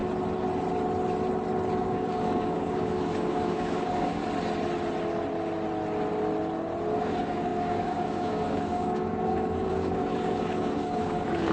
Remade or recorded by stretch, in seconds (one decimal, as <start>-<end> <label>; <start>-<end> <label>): 0.0-1.8 recorded; 1.8-4.2 remade; 4.2-7.0 recorded; 7.0-11.5 remade